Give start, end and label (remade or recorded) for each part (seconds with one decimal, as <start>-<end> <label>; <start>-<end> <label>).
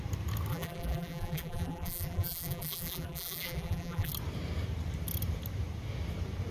0.0-0.5 recorded; 0.5-4.1 remade; 4.1-6.5 recorded